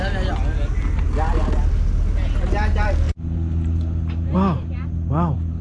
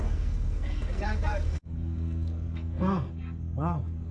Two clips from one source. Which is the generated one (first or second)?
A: second